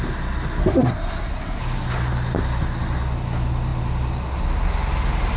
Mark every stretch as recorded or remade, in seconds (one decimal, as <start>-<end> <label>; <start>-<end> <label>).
0.0-0.6 recorded; 0.6-1.6 remade; 1.6-5.4 recorded

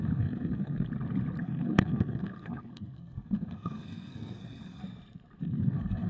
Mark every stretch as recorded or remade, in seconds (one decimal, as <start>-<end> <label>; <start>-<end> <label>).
0.0-0.9 remade; 0.9-1.4 recorded; 1.4-4.8 remade; 4.8-5.4 recorded; 5.4-6.1 remade